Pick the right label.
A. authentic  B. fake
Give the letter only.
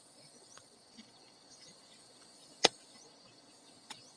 B